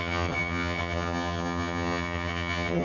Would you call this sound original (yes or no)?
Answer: no